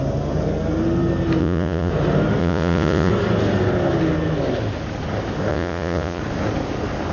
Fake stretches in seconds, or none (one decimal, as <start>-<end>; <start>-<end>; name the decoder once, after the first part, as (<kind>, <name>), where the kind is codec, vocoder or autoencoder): 1.4-1.9 (vocoder, Vocos); 2.4-3.1; 5.5-6.2